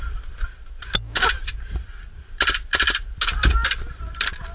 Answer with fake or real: real